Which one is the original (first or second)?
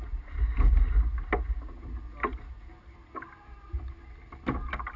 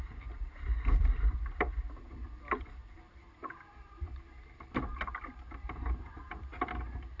first